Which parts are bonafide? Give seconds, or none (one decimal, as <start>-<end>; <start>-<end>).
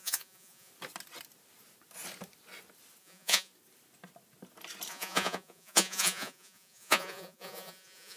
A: 0.7-3.0; 3.5-4.9